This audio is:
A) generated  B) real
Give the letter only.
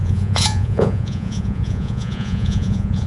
A